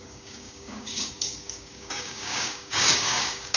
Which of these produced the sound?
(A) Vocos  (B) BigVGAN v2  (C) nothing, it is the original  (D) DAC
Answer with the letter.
D